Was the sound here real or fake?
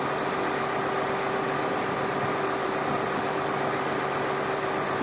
real